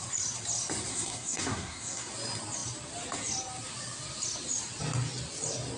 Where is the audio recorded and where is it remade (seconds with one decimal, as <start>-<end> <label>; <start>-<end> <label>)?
0.0-0.9 recorded; 0.9-2.1 remade; 2.1-5.8 recorded